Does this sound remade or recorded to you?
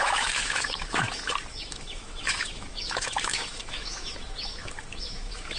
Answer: remade